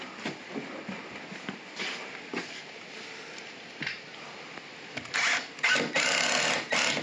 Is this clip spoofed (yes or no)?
no